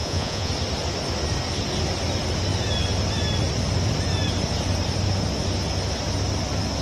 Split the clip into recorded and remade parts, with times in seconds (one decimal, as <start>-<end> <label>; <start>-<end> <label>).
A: 0.0-0.5 remade; 0.5-6.8 recorded